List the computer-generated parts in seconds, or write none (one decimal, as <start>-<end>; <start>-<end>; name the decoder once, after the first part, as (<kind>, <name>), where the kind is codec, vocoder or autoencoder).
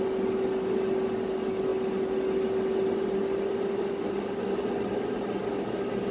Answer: none